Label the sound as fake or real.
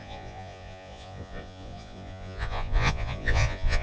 fake